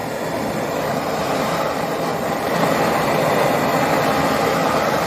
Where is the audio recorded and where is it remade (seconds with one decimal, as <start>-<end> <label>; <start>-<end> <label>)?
0.0-0.8 recorded; 0.8-2.1 remade; 2.1-2.8 recorded; 2.8-3.3 remade; 3.3-5.1 recorded